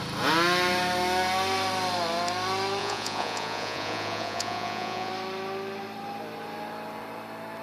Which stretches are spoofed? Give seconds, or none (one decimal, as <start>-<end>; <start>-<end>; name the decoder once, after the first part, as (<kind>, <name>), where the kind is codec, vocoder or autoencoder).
2.8-5.1 (vocoder, Vocos)